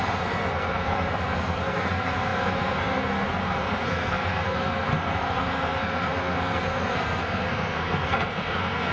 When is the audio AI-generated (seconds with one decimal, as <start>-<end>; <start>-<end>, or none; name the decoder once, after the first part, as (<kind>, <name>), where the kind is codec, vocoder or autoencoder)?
0.0-8.9 (codec, SNAC)